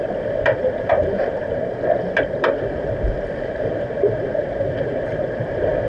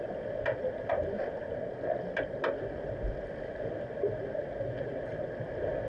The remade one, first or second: first